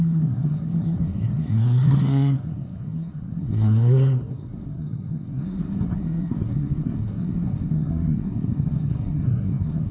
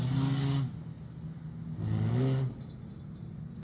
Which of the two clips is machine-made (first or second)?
first